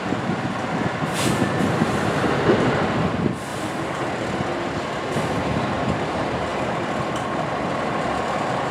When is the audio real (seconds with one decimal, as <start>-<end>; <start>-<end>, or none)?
0.0-3.5; 4.1-8.7